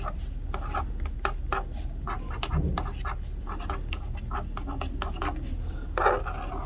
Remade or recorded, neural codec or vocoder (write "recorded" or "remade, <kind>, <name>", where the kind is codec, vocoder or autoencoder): recorded